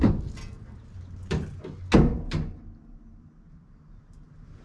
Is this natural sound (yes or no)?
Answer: yes